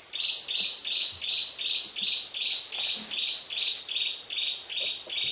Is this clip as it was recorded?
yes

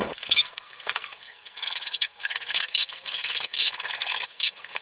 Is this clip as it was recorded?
no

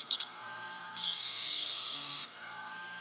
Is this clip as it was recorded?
no